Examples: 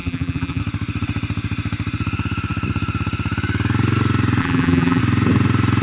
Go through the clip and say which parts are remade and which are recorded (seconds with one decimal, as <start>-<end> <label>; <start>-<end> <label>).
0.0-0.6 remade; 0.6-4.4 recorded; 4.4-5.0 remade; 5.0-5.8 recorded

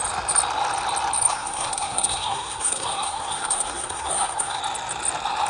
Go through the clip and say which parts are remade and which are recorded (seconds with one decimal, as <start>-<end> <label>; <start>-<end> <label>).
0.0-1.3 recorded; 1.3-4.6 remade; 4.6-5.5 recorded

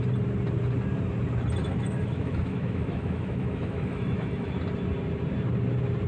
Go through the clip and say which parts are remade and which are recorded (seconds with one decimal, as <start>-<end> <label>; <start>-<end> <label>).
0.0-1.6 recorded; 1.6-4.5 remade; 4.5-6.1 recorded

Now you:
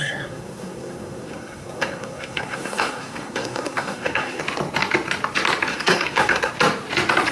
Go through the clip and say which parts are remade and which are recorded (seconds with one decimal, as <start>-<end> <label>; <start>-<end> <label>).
0.0-4.4 remade; 4.4-5.7 recorded; 5.7-6.5 remade; 6.5-7.3 recorded

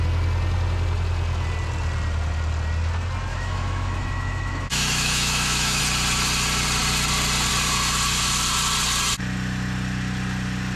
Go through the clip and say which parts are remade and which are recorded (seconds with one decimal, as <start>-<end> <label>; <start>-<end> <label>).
0.0-3.3 recorded; 3.3-5.8 remade; 5.8-10.8 recorded